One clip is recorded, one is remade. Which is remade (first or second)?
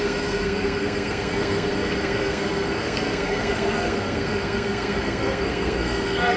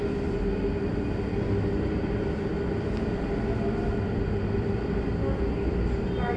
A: first